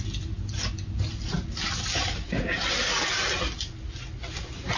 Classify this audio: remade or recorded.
recorded